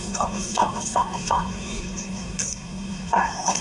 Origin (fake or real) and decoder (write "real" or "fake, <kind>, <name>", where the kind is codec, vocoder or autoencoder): fake, codec, SNAC